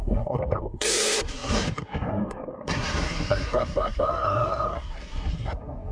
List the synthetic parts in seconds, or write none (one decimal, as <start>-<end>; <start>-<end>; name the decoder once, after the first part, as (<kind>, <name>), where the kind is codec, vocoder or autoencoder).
0.0-5.9 (codec, SNAC)